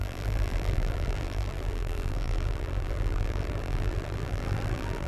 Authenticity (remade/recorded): remade